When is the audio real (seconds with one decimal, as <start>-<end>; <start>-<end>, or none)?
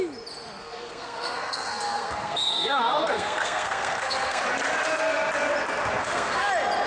0.0-0.6; 4.4-6.0; 6.5-6.9